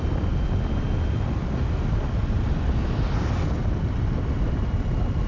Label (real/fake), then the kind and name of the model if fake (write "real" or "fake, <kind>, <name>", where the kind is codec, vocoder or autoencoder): real